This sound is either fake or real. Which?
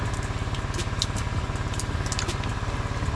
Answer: real